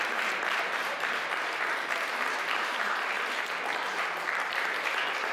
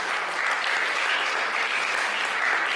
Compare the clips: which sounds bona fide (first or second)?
second